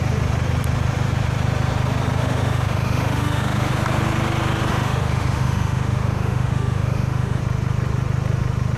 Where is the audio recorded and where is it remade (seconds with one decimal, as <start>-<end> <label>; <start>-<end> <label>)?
0.0-2.2 recorded; 2.2-3.7 remade; 3.7-4.7 recorded; 4.7-7.4 remade; 7.4-8.8 recorded